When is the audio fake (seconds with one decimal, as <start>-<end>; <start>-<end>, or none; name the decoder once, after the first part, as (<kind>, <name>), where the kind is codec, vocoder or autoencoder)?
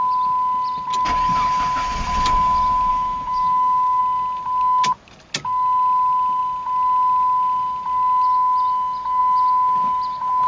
2.9-4.0 (autoencoder, DAC-VAE)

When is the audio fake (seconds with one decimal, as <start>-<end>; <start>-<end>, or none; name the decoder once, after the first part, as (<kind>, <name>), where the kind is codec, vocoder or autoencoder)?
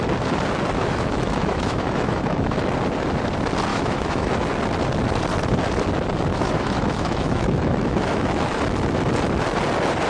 0.8-2.6 (autoencoder, DAC-VAE); 3.7-4.3; 6.3-8.6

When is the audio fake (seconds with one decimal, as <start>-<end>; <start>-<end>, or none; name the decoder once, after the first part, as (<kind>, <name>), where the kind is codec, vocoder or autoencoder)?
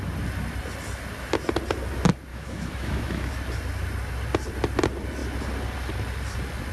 2.3-3.3 (autoencoder, DAC-VAE)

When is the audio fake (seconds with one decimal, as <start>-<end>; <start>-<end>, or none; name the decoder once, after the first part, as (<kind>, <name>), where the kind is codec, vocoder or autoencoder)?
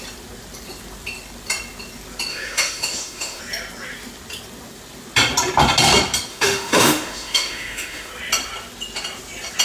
2.3-3.4 (autoencoder, DAC-VAE); 6.3-8.1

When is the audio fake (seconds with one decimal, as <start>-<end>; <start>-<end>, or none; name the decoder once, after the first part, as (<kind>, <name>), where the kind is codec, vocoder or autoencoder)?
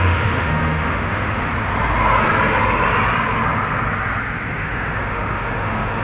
0.0-1.5 (autoencoder, DAC-VAE); 4.5-6.0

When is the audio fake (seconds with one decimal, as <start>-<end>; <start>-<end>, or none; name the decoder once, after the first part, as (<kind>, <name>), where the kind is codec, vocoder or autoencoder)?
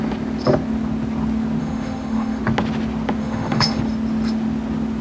1.6-2.4 (autoencoder, DAC-VAE); 3.2-3.8